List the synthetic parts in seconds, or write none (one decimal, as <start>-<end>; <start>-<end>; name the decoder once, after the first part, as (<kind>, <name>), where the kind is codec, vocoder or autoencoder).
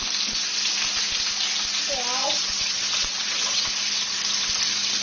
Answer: 2.2-3.7 (vocoder, WaveNeXt)